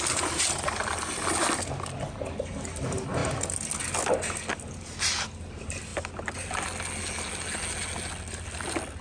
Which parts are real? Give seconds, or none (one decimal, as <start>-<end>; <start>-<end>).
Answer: 0.0-9.0